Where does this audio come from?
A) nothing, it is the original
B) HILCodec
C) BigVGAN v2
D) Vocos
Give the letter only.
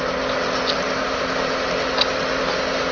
A